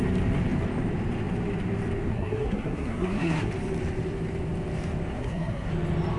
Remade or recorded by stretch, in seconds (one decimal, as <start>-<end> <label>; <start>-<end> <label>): 0.0-2.1 recorded; 2.1-3.5 remade; 3.5-5.1 recorded; 5.1-5.7 remade; 5.7-6.2 recorded